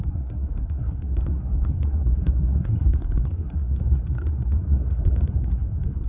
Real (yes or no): no